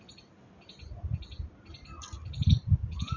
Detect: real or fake real